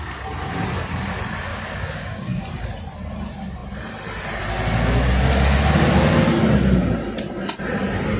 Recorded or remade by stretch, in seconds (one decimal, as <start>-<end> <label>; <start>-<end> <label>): 0.0-1.5 recorded; 1.5-2.4 remade; 2.4-8.2 recorded